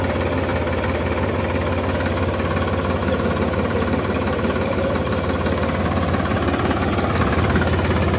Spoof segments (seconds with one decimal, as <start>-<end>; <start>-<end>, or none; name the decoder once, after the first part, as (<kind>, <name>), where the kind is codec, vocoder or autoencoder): 0.5-1.4 (vocoder, BigVGAN v2); 3.0-6.9